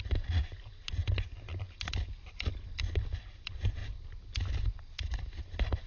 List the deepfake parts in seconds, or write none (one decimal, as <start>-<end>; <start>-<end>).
none